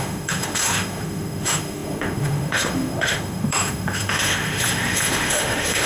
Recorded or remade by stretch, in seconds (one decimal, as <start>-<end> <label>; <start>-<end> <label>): 0.0-5.9 remade